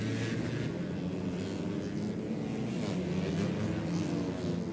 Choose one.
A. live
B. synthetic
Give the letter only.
A